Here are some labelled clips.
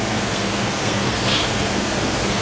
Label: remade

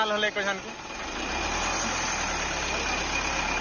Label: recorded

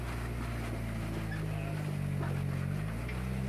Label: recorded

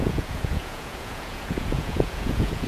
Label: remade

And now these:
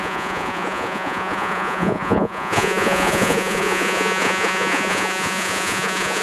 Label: remade